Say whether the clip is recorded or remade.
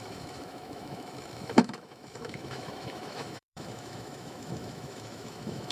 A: remade